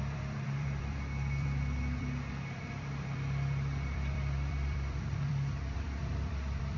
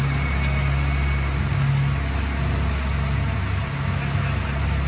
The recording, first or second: second